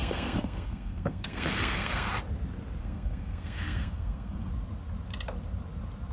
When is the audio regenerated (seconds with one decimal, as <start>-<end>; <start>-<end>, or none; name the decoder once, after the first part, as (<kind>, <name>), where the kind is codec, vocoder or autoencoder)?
0.0-2.1 (codec, SNAC); 2.8-4.5